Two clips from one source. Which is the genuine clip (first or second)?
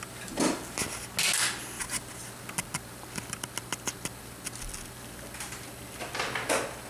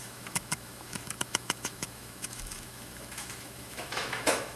first